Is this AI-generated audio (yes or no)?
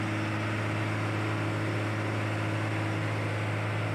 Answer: no